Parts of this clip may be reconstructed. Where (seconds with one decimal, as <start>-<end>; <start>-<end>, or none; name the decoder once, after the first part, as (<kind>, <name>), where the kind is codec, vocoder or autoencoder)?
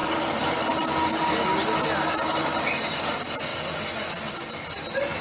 none